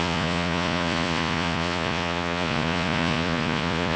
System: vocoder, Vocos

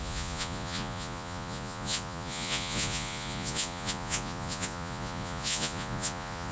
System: vocoder, Vocos